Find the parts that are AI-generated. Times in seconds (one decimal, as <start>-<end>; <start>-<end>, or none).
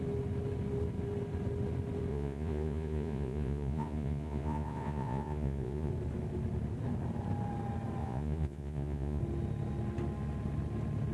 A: 2.1-5.9; 8.0-9.2